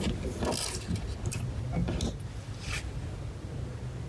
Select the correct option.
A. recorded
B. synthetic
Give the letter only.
A